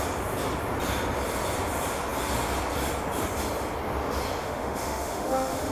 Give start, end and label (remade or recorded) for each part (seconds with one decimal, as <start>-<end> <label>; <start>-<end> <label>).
0.0-4.4 recorded; 4.4-5.7 remade